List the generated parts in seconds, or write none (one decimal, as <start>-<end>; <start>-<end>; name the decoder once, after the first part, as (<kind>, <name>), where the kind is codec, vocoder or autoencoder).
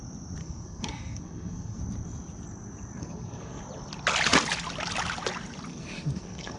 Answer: 0.4-1.8 (codec, SNAC); 3.0-3.6; 5.7-6.6